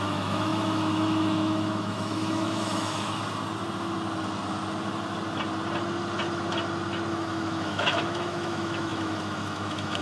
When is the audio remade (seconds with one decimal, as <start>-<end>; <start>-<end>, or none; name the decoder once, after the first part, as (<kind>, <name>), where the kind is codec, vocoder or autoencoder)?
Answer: 0.0-3.2 (autoencoder, DAC-VAE); 7.1-10.0